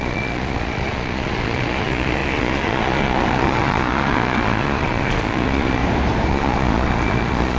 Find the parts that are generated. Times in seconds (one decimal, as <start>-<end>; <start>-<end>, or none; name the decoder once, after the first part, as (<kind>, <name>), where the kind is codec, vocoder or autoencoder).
0.0-5.8 (vocoder, Vocos); 6.3-7.6